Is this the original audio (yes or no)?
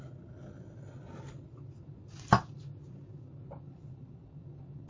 yes